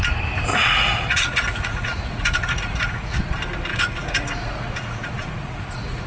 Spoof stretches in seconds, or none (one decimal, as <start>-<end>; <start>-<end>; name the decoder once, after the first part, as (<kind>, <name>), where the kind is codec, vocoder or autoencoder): 0.5-3.2 (vocoder, Vocos); 3.7-6.1